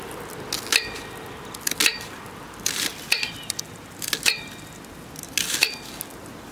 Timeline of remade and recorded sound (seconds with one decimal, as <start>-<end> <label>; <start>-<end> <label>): 0.0-1.9 recorded; 1.9-3.6 remade; 3.6-6.5 recorded